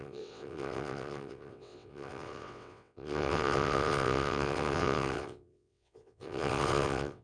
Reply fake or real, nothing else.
fake